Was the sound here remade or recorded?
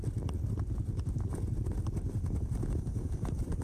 recorded